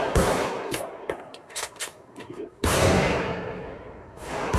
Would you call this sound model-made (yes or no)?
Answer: yes